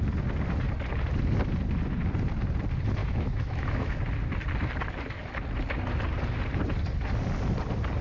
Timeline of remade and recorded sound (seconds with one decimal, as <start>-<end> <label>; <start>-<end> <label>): 0.0-3.0 recorded; 3.0-4.0 remade; 4.0-8.0 recorded